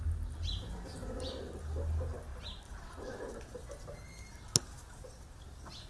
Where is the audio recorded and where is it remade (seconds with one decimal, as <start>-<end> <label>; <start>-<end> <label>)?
0.0-5.9 recorded